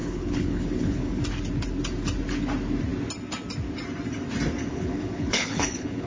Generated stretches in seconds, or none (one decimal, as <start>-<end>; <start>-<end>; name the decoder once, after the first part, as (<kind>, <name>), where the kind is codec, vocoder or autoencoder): 0.0-1.2 (codec, HILCodec); 4.7-6.1